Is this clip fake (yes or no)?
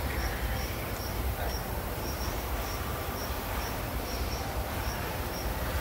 yes